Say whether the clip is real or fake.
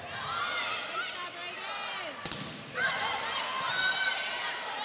real